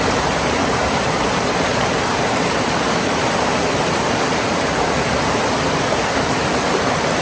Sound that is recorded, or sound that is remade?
remade